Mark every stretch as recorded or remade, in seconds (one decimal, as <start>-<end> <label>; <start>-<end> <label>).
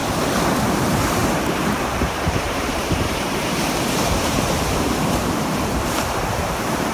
0.0-0.7 recorded; 0.7-6.9 remade